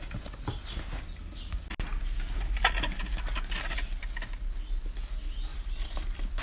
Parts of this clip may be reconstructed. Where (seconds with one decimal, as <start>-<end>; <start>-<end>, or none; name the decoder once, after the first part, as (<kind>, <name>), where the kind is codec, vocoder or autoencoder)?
5.5-6.4 (vocoder, BigVGAN v2)